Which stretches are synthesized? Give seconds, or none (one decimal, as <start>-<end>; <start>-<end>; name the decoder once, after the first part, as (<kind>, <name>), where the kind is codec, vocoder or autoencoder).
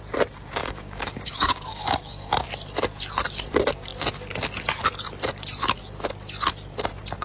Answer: 0.6-2.3 (codec, DAC)